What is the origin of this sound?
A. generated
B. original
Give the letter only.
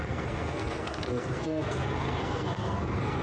A